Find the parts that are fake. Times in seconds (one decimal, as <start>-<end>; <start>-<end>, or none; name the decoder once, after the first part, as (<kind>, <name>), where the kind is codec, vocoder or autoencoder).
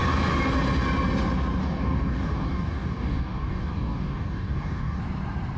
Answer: 1.6-5.0 (codec, DAC)